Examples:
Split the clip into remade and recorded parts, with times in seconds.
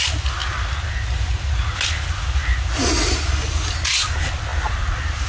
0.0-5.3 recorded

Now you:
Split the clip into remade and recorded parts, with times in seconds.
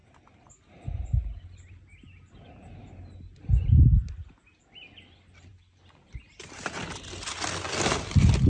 0.0-8.5 recorded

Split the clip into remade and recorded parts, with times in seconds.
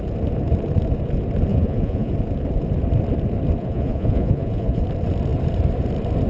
0.0-1.5 recorded; 1.5-2.1 remade; 2.1-3.6 recorded; 3.6-4.8 remade; 4.8-6.3 recorded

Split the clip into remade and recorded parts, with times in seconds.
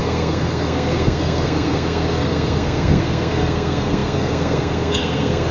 0.0-5.5 remade